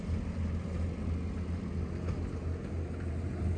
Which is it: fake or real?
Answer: real